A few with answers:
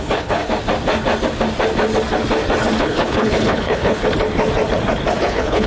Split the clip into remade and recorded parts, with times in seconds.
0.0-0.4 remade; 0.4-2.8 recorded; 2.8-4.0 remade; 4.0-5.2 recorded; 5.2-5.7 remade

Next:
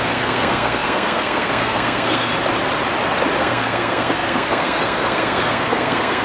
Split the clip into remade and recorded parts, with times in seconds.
0.0-2.3 remade; 2.3-3.4 recorded; 3.4-6.2 remade

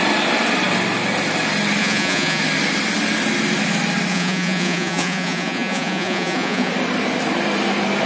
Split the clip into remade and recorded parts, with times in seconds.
0.0-1.8 recorded; 1.8-2.4 remade; 2.4-4.1 recorded; 4.1-6.7 remade; 6.7-8.1 recorded